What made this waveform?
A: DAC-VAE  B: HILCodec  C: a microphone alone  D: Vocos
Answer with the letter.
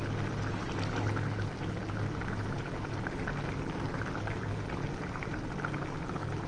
C